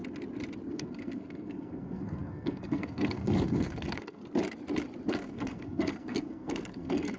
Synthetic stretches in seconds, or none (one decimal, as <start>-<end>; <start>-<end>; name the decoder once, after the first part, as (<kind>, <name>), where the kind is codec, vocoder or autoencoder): 0.7-4.2 (codec, SNAC); 5.1-7.2